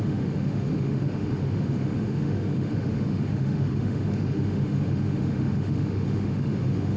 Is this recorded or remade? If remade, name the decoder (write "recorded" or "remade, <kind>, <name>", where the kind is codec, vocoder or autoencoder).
remade, autoencoder, DAC-VAE